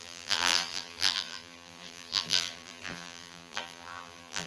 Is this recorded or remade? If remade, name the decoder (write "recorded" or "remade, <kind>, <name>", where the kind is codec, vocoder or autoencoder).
remade, vocoder, BigVGAN v2